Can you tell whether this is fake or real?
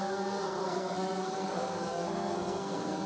fake